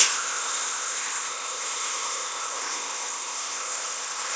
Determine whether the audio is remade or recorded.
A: remade